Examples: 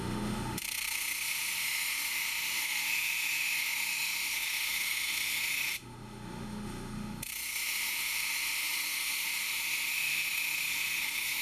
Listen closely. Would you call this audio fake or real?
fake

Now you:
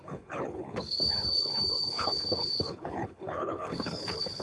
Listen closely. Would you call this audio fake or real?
fake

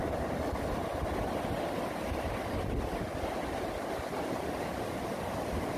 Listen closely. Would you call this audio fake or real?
real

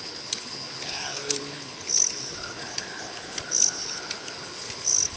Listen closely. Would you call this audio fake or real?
fake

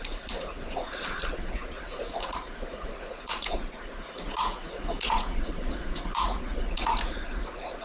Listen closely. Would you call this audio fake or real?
fake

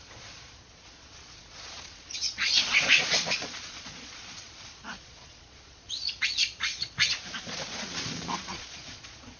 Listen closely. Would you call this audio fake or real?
fake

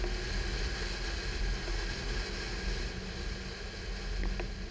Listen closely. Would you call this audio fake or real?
real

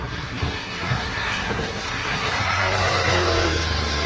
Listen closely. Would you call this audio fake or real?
fake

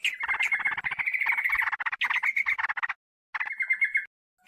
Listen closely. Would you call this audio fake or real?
real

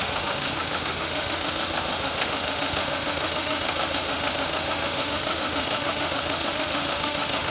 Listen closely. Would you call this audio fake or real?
fake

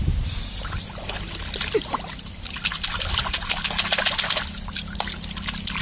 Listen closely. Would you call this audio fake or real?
real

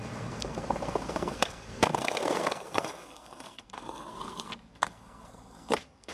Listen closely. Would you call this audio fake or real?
fake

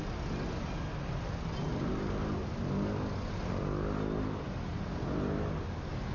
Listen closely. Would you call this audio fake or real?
real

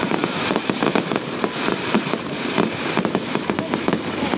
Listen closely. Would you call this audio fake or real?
fake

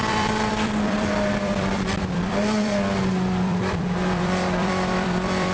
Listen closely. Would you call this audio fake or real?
fake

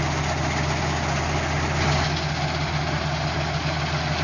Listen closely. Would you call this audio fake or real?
real